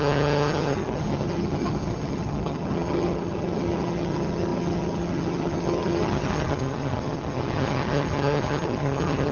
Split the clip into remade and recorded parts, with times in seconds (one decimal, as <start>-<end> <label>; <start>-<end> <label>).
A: 0.0-9.3 remade